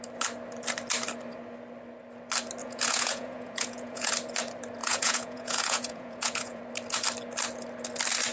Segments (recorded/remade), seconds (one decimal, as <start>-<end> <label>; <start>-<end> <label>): 0.0-2.6 recorded; 2.6-4.1 remade; 4.1-4.8 recorded; 4.8-6.6 remade; 6.6-8.3 recorded